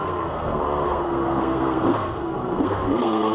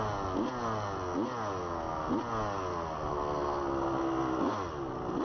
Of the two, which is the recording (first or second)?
second